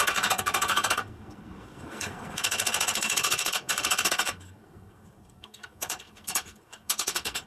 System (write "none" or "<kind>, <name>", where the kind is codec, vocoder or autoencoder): codec, SNAC